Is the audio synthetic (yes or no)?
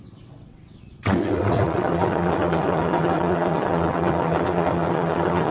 yes